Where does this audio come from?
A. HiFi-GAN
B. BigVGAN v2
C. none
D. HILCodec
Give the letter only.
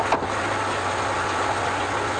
C